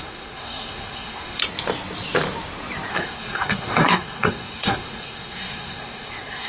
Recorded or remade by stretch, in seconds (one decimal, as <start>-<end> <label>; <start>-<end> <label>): 0.0-1.4 remade; 1.4-2.9 recorded; 2.9-6.5 remade